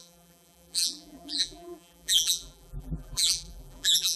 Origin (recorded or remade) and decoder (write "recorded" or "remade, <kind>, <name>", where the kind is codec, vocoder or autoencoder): remade, vocoder, BigVGAN v2